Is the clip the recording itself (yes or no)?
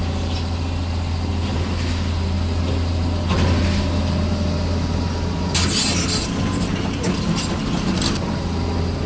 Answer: yes